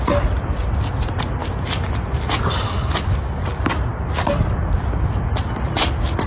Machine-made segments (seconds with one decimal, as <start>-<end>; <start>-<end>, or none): none